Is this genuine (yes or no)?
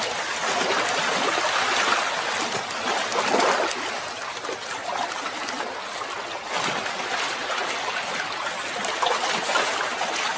yes